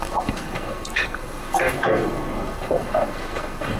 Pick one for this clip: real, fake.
fake